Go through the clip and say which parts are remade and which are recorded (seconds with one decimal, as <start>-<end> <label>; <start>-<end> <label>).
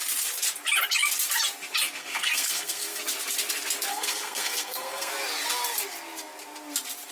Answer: 0.0-2.0 recorded; 2.0-3.0 remade; 3.0-3.9 recorded; 3.9-5.1 remade; 5.1-7.1 recorded